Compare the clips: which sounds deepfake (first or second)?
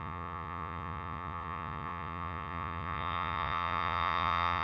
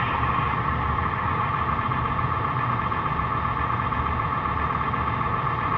first